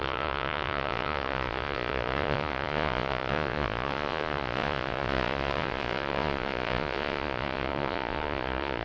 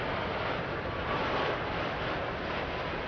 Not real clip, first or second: first